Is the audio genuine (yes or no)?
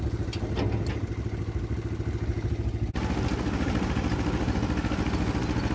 yes